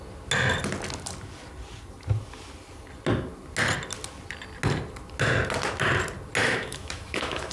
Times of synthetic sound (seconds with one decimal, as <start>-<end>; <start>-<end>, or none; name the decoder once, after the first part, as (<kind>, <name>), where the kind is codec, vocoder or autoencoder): 6.4-7.5 (autoencoder, DAC-VAE)